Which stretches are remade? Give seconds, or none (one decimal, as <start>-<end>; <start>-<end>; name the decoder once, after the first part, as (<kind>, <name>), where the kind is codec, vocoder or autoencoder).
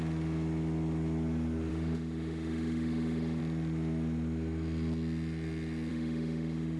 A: 1.7-3.4 (autoencoder, DAC-VAE); 5.9-6.8